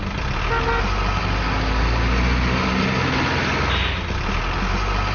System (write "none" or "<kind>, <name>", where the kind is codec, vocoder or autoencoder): none